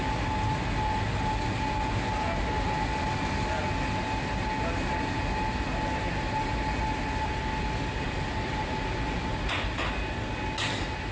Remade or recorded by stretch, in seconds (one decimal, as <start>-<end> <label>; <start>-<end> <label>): 0.0-11.1 recorded